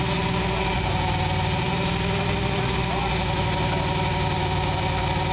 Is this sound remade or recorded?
recorded